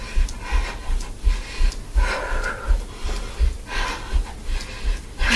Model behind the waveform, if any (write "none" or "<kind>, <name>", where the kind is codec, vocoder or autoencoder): none